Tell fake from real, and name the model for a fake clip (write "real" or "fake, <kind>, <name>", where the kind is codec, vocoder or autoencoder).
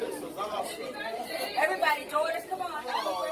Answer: fake, vocoder, BigVGAN v2